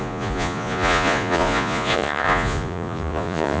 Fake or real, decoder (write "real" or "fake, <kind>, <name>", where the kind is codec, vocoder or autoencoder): fake, vocoder, Vocos